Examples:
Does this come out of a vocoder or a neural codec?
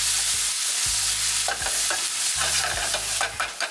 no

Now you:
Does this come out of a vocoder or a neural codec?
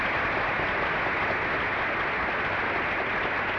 no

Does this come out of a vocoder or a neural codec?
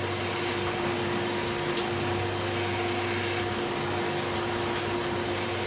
no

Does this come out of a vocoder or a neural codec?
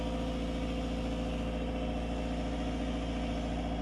no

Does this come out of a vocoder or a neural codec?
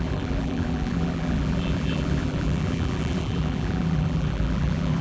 yes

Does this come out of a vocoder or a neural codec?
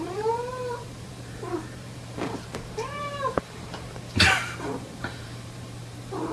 yes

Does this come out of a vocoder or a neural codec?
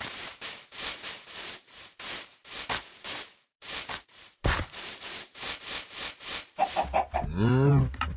yes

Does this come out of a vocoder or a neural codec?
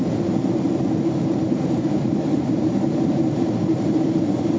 yes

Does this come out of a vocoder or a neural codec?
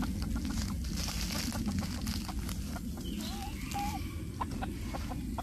no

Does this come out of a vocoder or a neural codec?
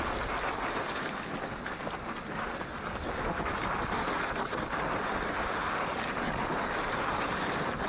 no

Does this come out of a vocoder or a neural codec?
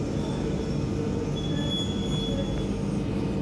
no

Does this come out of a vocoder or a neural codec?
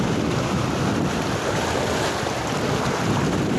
yes